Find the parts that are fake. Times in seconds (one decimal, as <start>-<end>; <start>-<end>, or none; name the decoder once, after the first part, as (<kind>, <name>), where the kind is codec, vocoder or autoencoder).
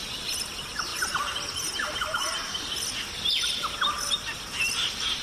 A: 0.9-2.7 (vocoder, BigVGAN v2)